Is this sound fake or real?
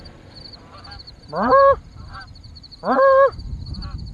fake